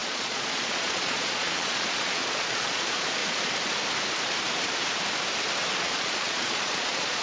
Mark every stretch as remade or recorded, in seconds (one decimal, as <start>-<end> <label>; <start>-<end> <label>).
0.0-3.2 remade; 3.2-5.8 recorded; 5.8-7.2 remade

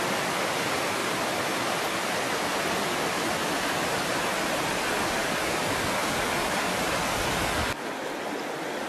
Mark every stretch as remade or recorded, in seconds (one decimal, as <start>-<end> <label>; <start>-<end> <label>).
0.0-5.2 recorded; 5.2-7.9 remade; 7.9-8.9 recorded

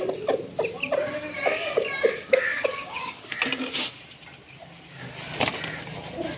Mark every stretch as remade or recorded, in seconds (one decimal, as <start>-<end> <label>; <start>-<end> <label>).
0.0-1.0 recorded; 1.0-3.3 remade; 3.3-6.4 recorded

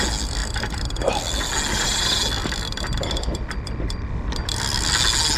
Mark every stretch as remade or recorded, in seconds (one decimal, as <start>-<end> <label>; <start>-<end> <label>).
0.0-0.4 recorded; 0.4-1.5 remade; 1.5-2.4 recorded; 2.4-4.4 remade; 4.4-5.4 recorded

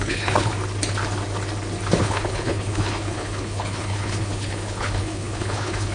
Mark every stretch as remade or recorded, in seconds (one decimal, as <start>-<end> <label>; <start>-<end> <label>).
0.0-0.5 remade; 0.5-2.0 recorded; 2.0-5.9 remade